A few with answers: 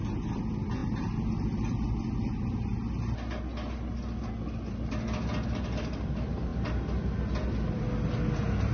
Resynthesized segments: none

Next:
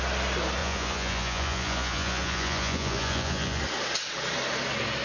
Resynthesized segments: 0.6-3.6 (vocoder, Vocos)

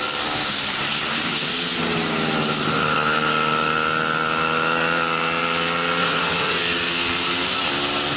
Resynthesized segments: 6.0-6.6 (vocoder, Vocos)